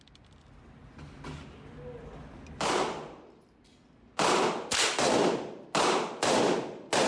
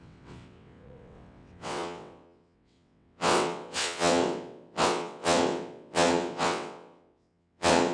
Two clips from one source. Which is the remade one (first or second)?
second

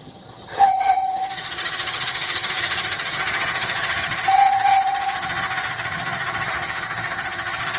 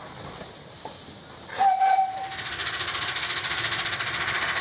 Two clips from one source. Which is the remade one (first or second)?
first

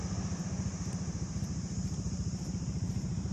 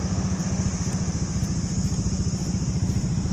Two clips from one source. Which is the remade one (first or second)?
first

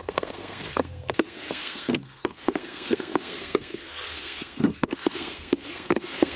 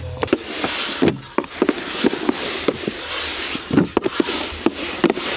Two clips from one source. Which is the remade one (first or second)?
first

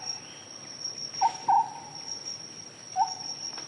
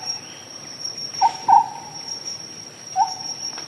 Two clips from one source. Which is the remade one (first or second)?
second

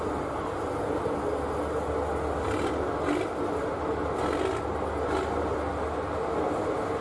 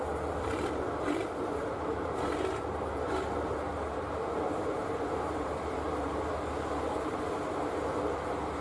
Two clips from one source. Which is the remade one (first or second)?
second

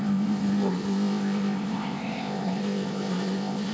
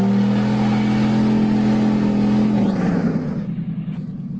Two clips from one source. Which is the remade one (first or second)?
first